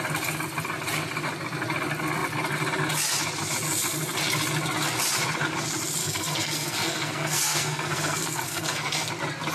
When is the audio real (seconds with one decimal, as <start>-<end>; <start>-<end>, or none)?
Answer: 0.0-6.0; 9.1-9.5

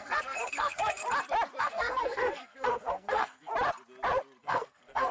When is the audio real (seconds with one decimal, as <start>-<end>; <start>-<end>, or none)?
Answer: 1.0-1.6; 3.5-4.4

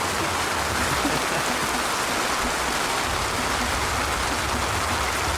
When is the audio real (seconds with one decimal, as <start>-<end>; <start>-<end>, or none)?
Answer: 0.0-5.4

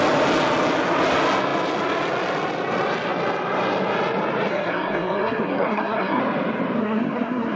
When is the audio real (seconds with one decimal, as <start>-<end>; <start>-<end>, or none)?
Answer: 0.0-4.5; 6.2-6.8

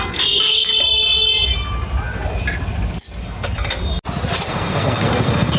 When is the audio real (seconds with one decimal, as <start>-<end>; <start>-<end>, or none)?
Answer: 0.7-3.2; 3.8-4.5

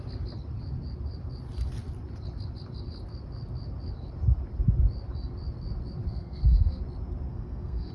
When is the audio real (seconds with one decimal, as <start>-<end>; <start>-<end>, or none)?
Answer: 0.0-6.1; 6.8-7.3

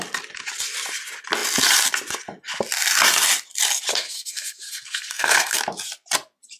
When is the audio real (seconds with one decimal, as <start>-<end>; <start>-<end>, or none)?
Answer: 0.0-3.9; 5.6-6.6